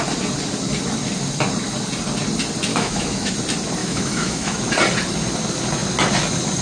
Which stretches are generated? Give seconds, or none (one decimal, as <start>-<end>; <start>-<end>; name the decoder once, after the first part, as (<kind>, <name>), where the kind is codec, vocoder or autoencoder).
2.7-3.3 (autoencoder, DAC-VAE); 3.8-4.6